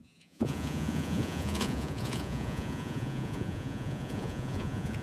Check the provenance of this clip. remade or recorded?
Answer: remade